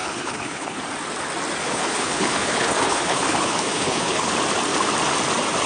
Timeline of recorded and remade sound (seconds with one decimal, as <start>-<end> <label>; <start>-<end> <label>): 0.0-0.8 remade; 0.8-1.6 recorded; 1.6-4.3 remade; 4.3-5.7 recorded